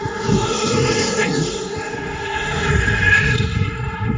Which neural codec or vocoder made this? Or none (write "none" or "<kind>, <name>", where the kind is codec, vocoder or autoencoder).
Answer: codec, SNAC